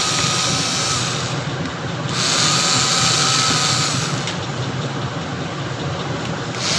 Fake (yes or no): no